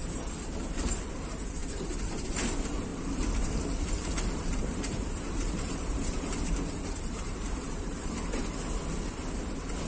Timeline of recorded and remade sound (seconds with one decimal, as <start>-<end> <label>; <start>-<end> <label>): 0.0-1.6 recorded; 1.6-2.1 remade; 2.1-2.9 recorded; 2.9-8.1 remade; 8.1-9.9 recorded